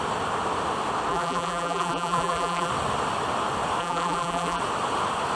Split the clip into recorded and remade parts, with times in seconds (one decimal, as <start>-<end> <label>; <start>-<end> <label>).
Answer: 0.0-1.1 recorded; 1.1-2.7 remade; 2.7-3.8 recorded; 3.8-4.6 remade; 4.6-5.4 recorded